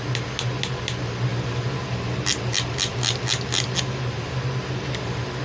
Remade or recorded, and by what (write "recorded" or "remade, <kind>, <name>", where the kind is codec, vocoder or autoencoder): recorded